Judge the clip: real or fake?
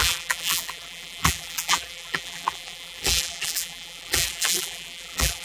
fake